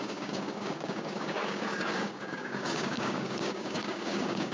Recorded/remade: remade